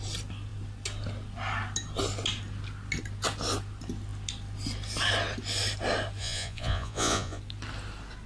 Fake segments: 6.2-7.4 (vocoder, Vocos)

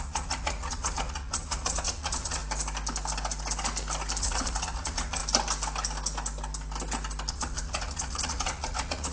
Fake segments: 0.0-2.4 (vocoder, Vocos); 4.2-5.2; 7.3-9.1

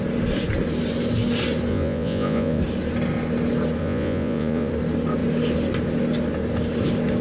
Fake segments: 1.7-2.6 (vocoder, Vocos); 3.8-4.7

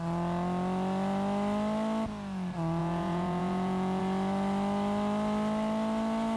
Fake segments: 2.8-4.0 (vocoder, Vocos)

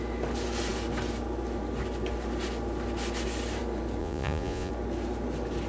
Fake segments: 4.0-4.7 (vocoder, Vocos)

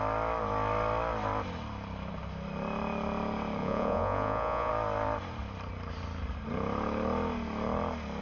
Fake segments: 3.6-4.7 (vocoder, Vocos)

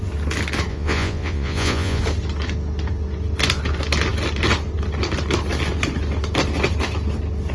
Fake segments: 0.7-2.0 (vocoder, Vocos)